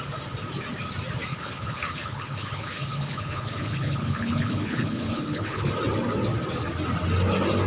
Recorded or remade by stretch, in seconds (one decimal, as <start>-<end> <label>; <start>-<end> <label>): 0.0-1.3 recorded; 1.3-5.7 remade; 5.7-7.7 recorded